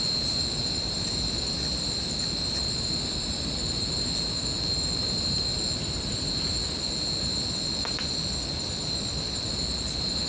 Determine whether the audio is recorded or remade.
recorded